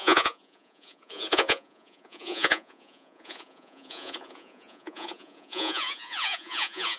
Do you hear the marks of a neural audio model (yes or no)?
yes